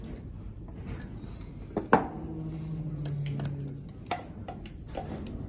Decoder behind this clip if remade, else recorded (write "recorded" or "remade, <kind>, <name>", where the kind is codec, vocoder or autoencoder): recorded